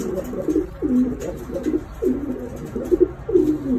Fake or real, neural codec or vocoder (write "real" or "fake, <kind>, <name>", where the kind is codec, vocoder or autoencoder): real